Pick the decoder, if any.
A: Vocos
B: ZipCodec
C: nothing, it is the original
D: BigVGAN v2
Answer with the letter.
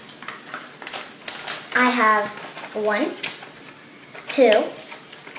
C